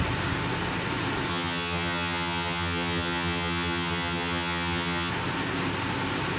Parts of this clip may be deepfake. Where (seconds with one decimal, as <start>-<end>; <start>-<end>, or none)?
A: 1.3-5.1